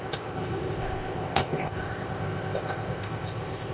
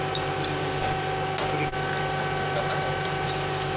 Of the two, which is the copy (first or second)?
first